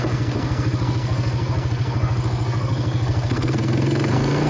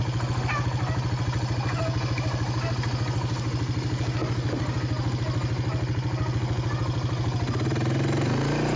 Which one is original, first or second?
second